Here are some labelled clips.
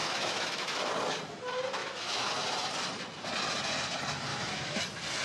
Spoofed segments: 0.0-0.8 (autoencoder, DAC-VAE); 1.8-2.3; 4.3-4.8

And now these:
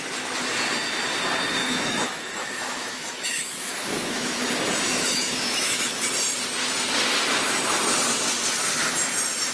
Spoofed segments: 1.6-4.4 (autoencoder, DAC-VAE); 4.9-5.9